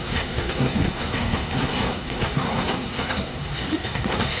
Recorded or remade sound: remade